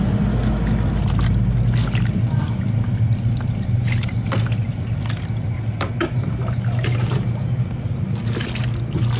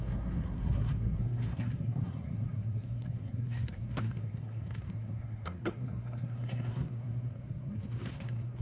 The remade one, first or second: second